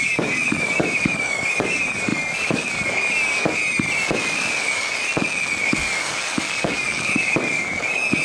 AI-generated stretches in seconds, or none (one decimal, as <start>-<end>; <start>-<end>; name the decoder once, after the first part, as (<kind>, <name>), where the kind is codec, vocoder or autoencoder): 0.0-3.6 (codec, DAC); 4.6-5.1; 5.6-8.2